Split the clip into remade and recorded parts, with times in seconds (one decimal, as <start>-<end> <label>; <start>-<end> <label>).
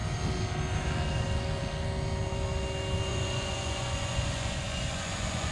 0.0-3.1 recorded; 3.1-5.5 remade